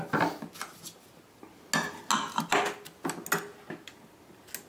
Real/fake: real